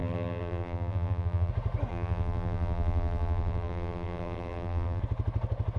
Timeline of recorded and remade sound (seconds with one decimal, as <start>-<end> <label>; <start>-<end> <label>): 0.0-1.5 remade; 1.5-1.9 recorded; 1.9-5.0 remade; 5.0-5.8 recorded